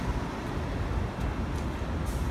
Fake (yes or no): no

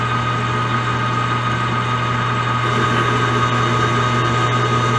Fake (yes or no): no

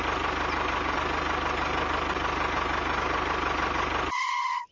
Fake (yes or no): no